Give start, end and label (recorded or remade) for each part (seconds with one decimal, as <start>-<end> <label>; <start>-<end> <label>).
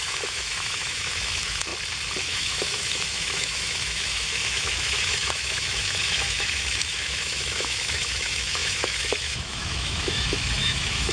0.0-1.7 remade; 1.7-2.2 recorded; 2.2-11.1 remade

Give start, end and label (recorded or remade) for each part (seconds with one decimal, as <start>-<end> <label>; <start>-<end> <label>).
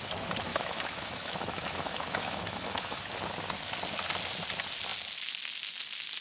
0.0-0.5 recorded; 0.5-3.0 remade; 3.0-6.2 recorded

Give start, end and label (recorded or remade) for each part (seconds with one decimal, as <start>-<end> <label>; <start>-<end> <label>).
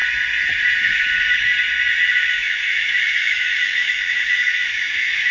0.0-0.8 recorded; 0.8-1.5 remade; 1.5-2.1 recorded; 2.1-5.3 remade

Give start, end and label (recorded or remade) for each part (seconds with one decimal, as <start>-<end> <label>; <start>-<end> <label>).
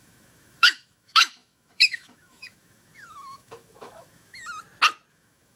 0.0-4.5 remade; 4.5-5.1 recorded; 5.1-5.6 remade